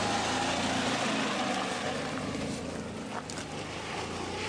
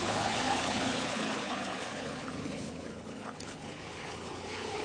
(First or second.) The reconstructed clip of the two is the second